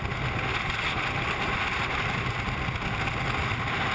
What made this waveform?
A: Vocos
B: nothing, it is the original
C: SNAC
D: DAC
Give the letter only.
B